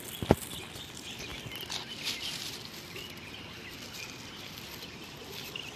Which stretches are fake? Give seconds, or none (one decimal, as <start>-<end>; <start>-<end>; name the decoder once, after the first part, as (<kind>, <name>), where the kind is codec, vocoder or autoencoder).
none